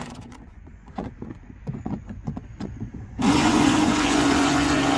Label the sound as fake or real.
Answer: fake